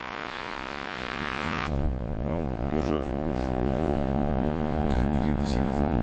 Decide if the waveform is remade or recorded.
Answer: remade